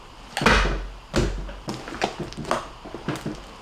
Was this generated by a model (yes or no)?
no